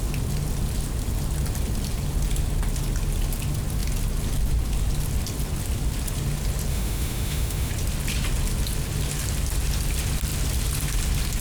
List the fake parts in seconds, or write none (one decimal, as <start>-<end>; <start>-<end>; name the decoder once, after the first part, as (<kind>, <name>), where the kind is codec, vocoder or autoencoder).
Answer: 6.7-7.7 (autoencoder, DAC-VAE)